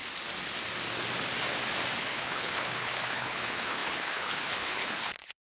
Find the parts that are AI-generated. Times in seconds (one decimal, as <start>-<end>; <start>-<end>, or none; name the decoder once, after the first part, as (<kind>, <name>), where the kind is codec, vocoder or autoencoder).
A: 2.0-5.6 (codec, HILCodec)